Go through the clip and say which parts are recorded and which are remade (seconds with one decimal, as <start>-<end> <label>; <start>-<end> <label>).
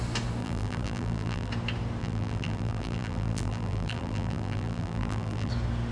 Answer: 0.0-0.4 recorded; 0.4-1.5 remade; 1.5-2.0 recorded; 2.0-5.5 remade; 5.5-5.9 recorded